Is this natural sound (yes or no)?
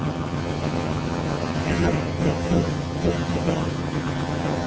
no